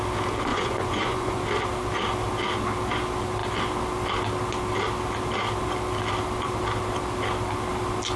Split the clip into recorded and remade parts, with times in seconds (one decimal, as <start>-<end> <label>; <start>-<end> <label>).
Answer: 0.0-0.5 recorded; 0.5-1.4 remade; 1.4-8.2 recorded